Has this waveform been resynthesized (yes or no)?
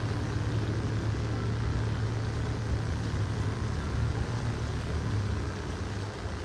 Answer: no